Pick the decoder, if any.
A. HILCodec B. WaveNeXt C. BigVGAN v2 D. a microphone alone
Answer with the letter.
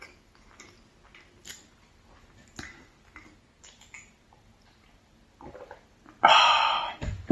D